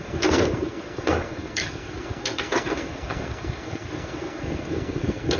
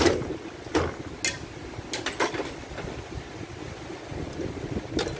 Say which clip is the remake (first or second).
first